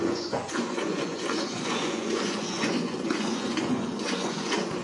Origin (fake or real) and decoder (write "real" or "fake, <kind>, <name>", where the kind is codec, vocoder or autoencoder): fake, vocoder, Vocos